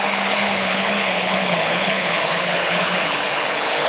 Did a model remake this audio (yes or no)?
yes